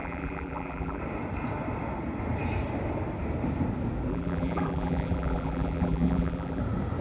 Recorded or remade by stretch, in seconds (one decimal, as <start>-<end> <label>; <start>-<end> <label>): 0.0-1.0 remade; 1.0-4.1 recorded; 4.1-6.6 remade; 6.6-7.0 recorded